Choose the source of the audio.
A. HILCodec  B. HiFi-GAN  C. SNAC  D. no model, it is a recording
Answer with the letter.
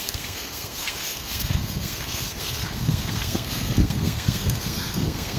C